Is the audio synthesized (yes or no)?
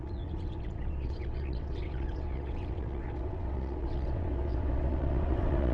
yes